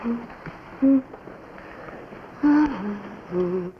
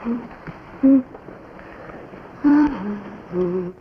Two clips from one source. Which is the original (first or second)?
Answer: first